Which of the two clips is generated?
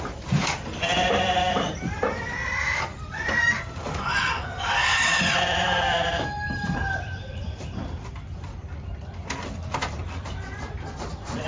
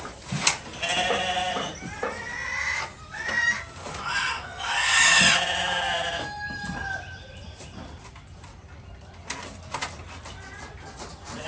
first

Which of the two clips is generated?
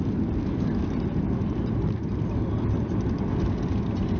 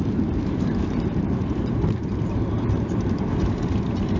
second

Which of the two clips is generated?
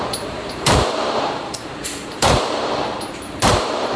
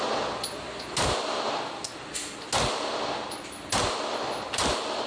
first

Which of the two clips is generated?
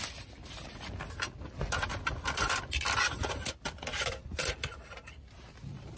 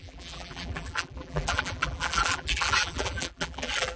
second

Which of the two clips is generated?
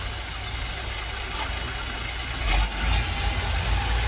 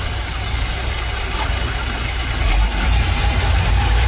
second